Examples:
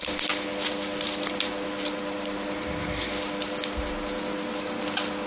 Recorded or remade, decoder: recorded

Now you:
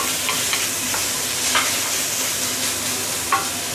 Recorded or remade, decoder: recorded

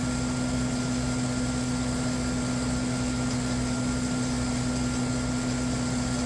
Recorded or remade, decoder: recorded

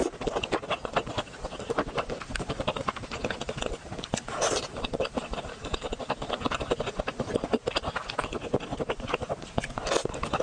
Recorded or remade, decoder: recorded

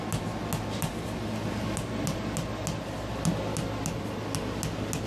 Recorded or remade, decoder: recorded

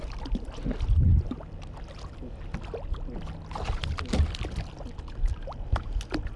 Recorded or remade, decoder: recorded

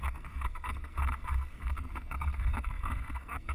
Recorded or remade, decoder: remade, codec, SNAC